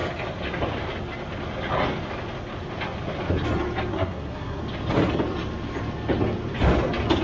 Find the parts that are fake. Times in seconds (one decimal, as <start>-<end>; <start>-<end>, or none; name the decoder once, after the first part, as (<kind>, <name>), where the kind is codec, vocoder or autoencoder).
3.9-4.6 (codec, SNAC)